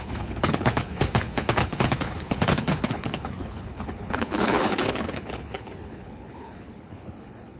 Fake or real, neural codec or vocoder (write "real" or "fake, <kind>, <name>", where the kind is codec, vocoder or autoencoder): fake, codec, HILCodec